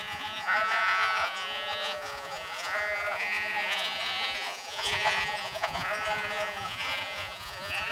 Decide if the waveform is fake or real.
fake